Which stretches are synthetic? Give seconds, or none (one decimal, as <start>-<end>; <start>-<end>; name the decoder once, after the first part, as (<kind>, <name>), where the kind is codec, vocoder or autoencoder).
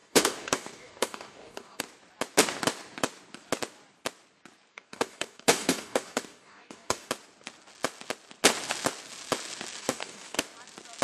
0.0-1.8 (codec, DAC); 4.7-7.1; 9.8-10.4